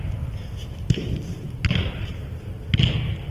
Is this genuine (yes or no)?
yes